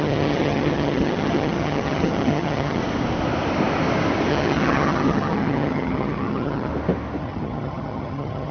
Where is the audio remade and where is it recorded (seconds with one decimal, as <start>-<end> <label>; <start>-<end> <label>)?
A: 0.0-2.8 remade; 2.8-4.3 recorded; 4.3-6.7 remade; 6.7-7.2 recorded; 7.2-8.5 remade

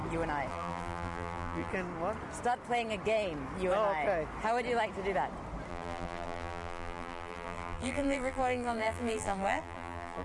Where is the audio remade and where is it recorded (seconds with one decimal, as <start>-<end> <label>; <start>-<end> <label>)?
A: 0.0-0.5 recorded; 0.5-1.7 remade; 1.7-5.7 recorded; 5.7-10.2 remade

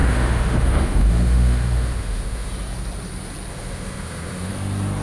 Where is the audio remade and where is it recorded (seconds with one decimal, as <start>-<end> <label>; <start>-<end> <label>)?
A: 0.0-2.5 remade; 2.5-3.5 recorded; 3.5-4.5 remade; 4.5-5.0 recorded

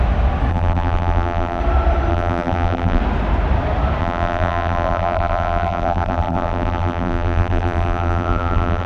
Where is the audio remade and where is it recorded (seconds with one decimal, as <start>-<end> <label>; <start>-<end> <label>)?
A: 0.0-0.5 recorded; 0.5-1.6 remade; 1.6-2.1 recorded; 2.1-3.0 remade; 3.0-4.0 recorded; 4.0-8.9 remade